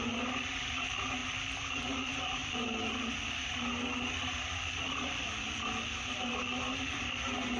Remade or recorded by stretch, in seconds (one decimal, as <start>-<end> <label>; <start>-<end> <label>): 0.0-7.6 recorded